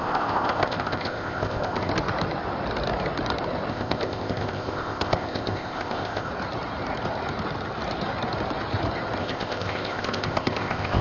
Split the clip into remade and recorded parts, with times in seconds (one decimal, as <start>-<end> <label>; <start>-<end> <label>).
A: 0.0-1.9 remade; 1.9-3.7 recorded; 3.7-6.3 remade; 6.3-9.2 recorded; 9.2-11.0 remade